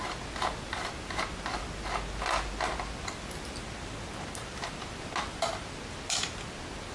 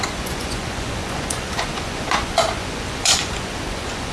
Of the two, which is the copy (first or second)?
second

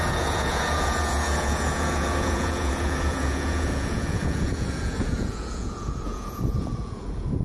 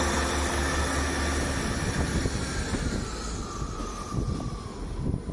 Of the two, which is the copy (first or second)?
first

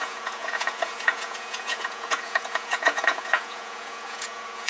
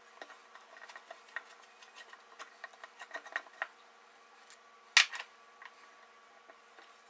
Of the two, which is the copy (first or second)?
first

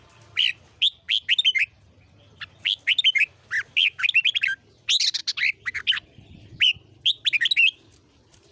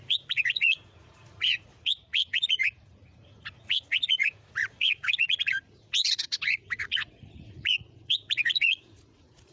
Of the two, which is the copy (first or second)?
second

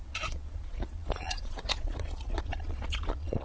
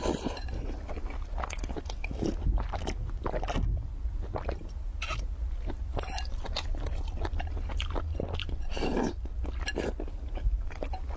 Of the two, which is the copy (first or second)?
first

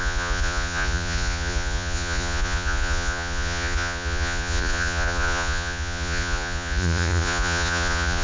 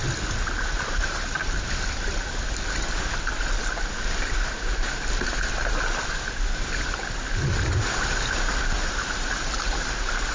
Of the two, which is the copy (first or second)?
first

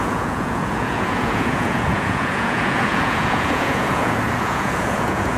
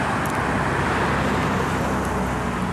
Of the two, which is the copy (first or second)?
first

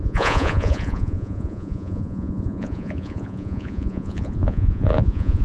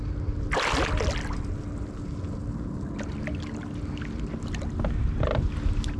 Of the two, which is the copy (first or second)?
first